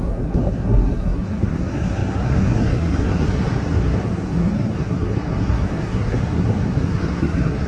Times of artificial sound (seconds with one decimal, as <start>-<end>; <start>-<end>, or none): 0.0-7.7